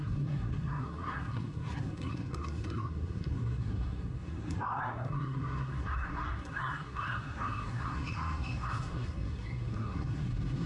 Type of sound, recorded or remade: remade